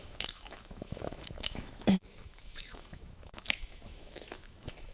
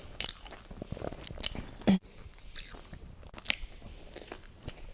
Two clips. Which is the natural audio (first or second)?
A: second